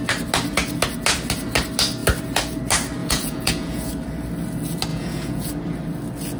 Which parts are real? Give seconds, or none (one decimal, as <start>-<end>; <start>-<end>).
0.0-3.0; 3.9-4.9; 5.5-6.4